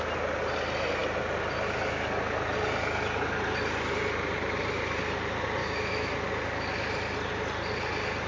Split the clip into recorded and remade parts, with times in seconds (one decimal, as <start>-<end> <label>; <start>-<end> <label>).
0.0-5.6 recorded; 5.6-6.1 remade; 6.1-8.3 recorded